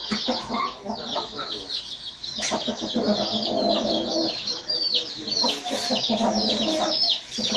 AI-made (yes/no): yes